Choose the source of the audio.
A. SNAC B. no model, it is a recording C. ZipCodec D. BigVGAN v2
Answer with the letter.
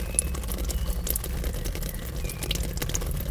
B